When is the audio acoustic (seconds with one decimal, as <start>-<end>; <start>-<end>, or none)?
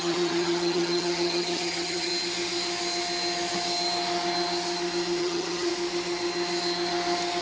2.1-5.2; 5.7-7.4